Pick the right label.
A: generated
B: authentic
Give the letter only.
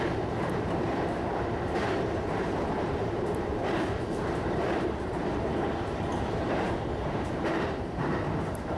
A